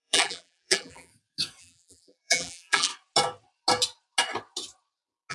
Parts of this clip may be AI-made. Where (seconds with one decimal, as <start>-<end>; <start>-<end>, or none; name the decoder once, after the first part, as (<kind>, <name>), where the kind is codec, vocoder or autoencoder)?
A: 0.0-1.1 (vocoder, BigVGAN v2); 1.6-2.9